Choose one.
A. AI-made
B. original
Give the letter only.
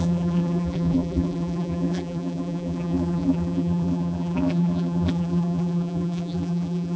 A